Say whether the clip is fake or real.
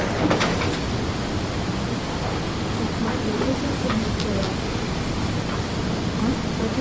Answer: real